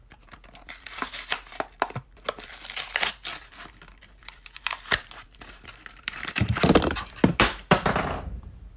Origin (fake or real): fake